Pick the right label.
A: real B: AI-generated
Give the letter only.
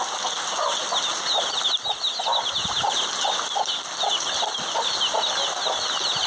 A